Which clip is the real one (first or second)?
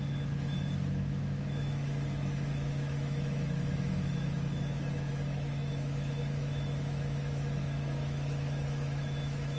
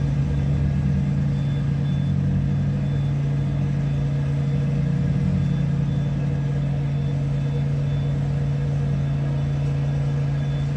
second